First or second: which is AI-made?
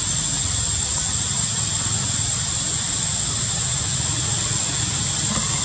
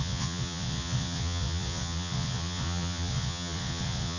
second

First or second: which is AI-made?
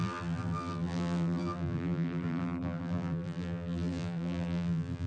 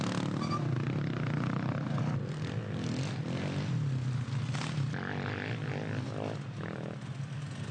first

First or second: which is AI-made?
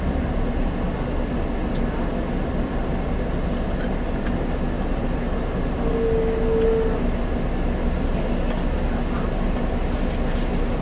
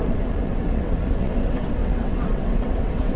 second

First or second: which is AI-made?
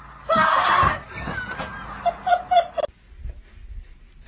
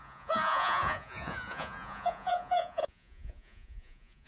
second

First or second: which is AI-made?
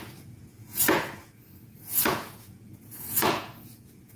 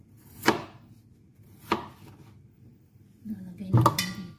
first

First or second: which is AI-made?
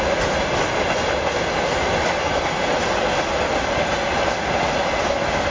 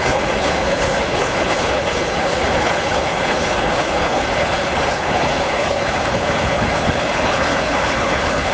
second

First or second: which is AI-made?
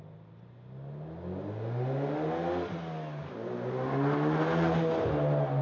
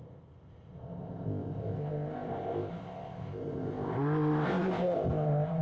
second